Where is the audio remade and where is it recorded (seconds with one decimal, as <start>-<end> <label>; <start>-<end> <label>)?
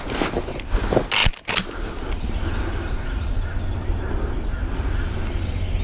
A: 0.0-5.8 recorded